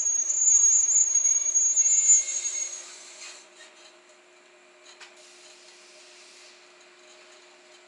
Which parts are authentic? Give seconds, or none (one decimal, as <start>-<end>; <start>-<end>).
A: 0.0-1.0; 1.5-2.3; 4.0-7.9